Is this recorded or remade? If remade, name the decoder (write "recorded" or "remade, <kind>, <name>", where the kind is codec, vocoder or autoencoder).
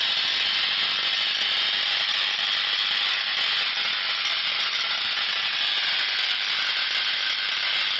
recorded